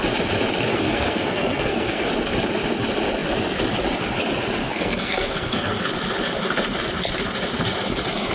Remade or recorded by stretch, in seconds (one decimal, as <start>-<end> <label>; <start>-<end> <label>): 0.0-0.7 recorded; 0.7-2.1 remade; 2.1-4.6 recorded; 4.6-5.8 remade; 5.8-8.3 recorded